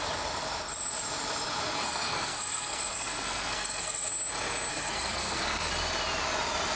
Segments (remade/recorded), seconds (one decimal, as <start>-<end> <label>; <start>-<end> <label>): 0.0-1.8 recorded; 1.8-4.1 remade; 4.1-4.7 recorded; 4.7-5.7 remade; 5.7-6.8 recorded